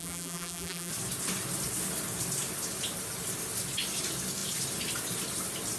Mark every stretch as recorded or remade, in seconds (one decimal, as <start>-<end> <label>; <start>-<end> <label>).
0.0-0.9 remade; 0.9-5.8 recorded